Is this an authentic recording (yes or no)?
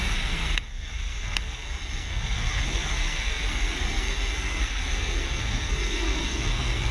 no